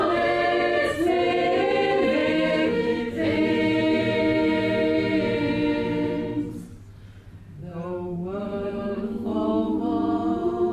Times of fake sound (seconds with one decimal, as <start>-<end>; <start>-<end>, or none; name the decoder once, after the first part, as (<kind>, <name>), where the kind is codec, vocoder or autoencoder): 2.2-4.0 (autoencoder, DAC-VAE); 8.4-9.8